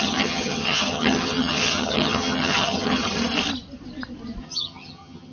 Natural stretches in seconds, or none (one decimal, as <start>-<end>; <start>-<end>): 3.0-4.4